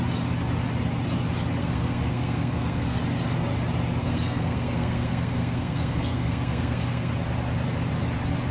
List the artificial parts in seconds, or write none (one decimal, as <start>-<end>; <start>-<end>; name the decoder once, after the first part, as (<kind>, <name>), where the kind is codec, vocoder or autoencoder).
1.6-3.0 (codec, SNAC); 4.0-7.1